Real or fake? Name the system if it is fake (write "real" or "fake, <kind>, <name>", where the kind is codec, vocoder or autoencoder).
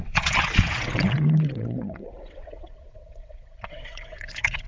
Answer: fake, vocoder, WaveNeXt